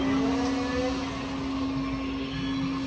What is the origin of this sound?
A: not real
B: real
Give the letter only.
B